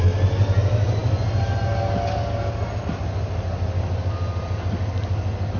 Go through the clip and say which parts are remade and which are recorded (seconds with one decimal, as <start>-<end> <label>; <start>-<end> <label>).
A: 0.0-5.6 recorded